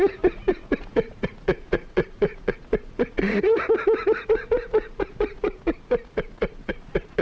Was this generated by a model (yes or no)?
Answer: yes